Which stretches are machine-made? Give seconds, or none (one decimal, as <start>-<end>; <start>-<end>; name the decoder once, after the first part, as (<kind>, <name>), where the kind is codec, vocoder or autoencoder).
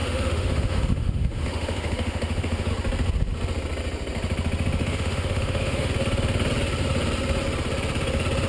0.0-2.7 (autoencoder, DAC-VAE); 4.8-5.9